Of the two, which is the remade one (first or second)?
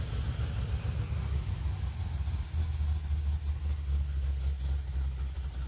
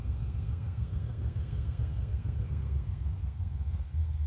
second